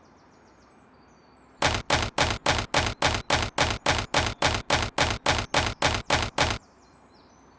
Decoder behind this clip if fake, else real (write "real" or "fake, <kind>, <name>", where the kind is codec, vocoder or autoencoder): real